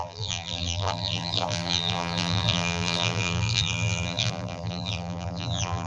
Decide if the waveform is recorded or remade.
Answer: remade